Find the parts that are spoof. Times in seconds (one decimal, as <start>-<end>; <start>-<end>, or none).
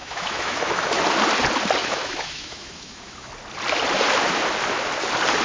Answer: 0.0-1.0; 1.8-3.3